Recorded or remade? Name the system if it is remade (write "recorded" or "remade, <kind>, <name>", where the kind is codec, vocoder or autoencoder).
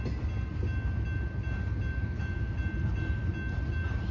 recorded